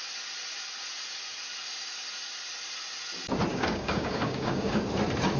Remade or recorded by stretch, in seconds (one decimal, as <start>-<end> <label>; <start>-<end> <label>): 0.0-3.5 recorded; 3.5-4.8 remade; 4.8-5.4 recorded